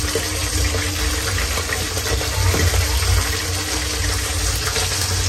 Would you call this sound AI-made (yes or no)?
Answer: no